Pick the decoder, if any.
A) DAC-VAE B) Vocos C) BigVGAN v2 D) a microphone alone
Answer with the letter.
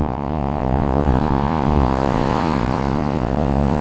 B